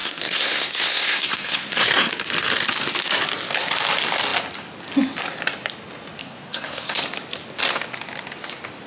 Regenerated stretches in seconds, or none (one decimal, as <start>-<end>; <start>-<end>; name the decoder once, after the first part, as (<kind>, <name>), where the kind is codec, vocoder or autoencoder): 0.0-2.1 (codec, SNAC); 6.2-7.0